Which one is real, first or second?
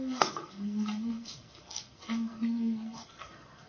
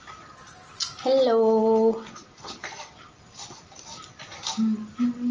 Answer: second